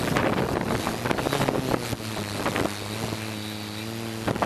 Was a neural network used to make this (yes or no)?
no